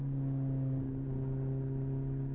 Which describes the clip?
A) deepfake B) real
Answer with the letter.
B